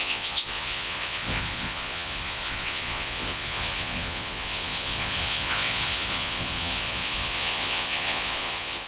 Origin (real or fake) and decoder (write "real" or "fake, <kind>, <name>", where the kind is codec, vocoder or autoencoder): fake, vocoder, Vocos